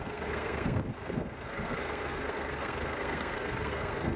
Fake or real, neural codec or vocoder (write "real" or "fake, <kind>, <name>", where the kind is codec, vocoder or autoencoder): fake, codec, SNAC